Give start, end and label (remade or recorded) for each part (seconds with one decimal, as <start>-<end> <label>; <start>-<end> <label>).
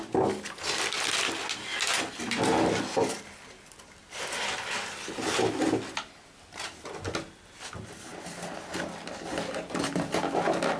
0.0-10.8 recorded